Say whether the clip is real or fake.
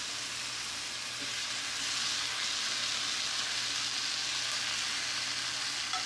real